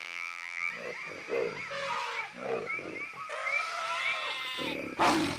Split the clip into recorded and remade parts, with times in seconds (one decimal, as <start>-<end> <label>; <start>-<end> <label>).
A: 0.0-0.7 remade; 0.7-5.4 recorded